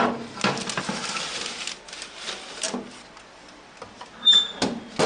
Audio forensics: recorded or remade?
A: recorded